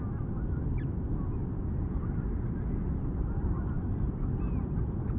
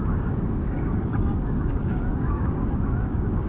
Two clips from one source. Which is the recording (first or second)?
first